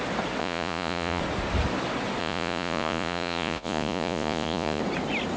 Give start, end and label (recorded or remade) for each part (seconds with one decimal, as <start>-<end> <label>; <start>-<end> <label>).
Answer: 0.0-0.4 recorded; 0.4-1.2 remade; 1.2-2.2 recorded; 2.2-4.8 remade; 4.8-5.4 recorded